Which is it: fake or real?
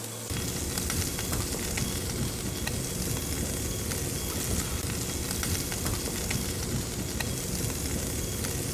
real